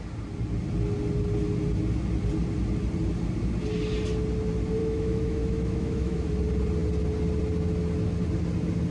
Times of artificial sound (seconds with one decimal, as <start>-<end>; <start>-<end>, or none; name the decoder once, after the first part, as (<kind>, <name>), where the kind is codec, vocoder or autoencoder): 4.8-6.3 (autoencoder, DAC-VAE)

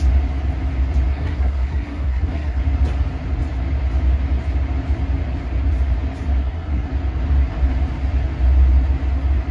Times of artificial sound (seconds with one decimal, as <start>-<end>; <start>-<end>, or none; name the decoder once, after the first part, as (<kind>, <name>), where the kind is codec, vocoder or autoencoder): 1.1-2.6 (codec, SNAC); 6.4-6.9

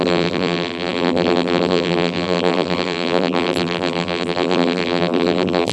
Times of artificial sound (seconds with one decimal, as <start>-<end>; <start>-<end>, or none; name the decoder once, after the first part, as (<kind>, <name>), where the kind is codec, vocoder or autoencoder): 0.0-5.7 (vocoder, BigVGAN v2)

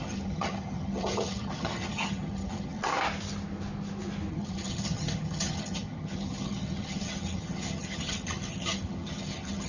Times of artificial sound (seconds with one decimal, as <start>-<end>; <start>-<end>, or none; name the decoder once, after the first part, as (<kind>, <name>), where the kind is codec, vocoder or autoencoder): 0.0-2.9 (vocoder, HiFi-GAN); 4.3-9.7

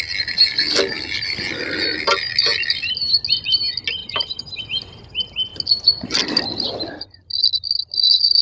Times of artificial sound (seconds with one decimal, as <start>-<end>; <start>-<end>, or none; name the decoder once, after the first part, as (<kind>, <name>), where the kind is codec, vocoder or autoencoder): 4.0-4.6 (vocoder, BigVGAN v2)

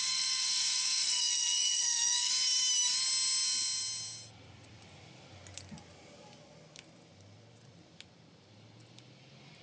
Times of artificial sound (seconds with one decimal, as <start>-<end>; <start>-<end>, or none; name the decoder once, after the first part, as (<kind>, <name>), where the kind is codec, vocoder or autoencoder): 0.0-2.3 (codec, SNAC)

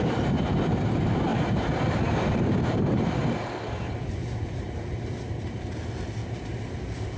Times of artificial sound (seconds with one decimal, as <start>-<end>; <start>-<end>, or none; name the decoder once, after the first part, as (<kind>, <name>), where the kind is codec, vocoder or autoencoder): 0.0-1.3 (vocoder, BigVGAN v2); 2.3-3.2; 4.1-6.2; 6.7-7.2

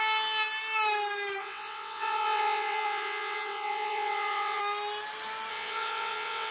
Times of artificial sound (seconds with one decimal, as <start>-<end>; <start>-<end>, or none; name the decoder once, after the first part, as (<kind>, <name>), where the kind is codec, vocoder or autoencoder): 1.4-4.6 (vocoder, WaveNeXt); 5.5-6.5